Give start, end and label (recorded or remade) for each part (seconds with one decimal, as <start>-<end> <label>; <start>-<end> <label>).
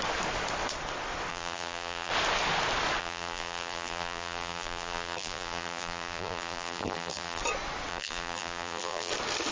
0.0-1.3 recorded; 1.3-2.1 remade; 2.1-3.0 recorded; 3.0-7.4 remade; 7.4-7.9 recorded; 7.9-9.1 remade; 9.1-9.5 recorded